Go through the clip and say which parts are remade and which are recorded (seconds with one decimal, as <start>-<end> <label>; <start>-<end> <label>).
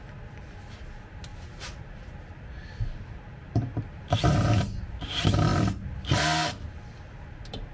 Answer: 0.0-1.3 recorded; 1.3-4.8 remade; 4.8-7.7 recorded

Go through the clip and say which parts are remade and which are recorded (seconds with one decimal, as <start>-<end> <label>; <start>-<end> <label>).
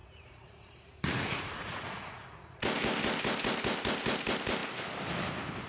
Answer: 0.0-2.6 remade; 2.6-5.7 recorded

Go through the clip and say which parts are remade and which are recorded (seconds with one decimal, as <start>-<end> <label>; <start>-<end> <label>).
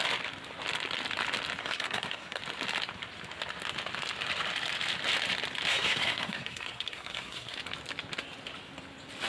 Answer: 0.0-1.6 recorded; 1.6-2.4 remade; 2.4-5.7 recorded; 5.7-7.6 remade; 7.6-9.3 recorded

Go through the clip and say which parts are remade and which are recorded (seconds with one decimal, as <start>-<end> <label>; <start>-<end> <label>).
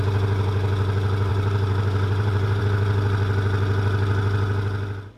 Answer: 0.0-1.3 recorded; 1.3-2.6 remade; 2.6-5.2 recorded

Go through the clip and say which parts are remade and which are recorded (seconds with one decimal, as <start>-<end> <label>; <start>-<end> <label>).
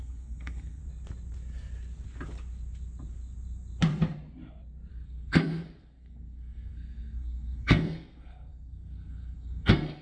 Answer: 0.0-0.8 remade; 0.8-4.9 recorded; 4.9-10.0 remade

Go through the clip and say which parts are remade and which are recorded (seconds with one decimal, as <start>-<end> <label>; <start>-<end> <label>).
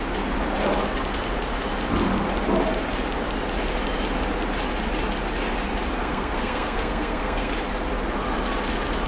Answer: 0.0-6.0 recorded; 6.0-7.5 remade; 7.5-9.1 recorded